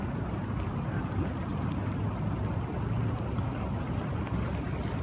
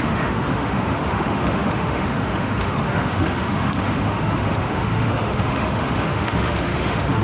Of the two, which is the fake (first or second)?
second